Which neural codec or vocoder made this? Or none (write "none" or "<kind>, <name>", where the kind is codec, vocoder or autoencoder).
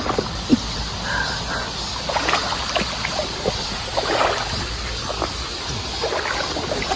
none